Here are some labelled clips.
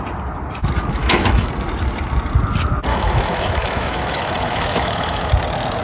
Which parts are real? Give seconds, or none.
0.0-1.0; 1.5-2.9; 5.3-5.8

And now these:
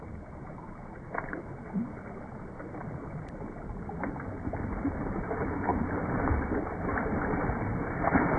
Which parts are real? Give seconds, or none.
0.0-8.4

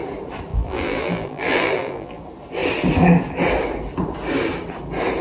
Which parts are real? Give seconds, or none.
0.0-0.5; 2.2-5.2

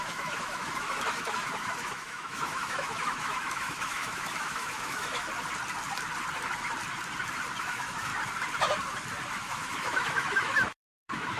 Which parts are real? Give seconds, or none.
5.3-7.6; 8.1-9.3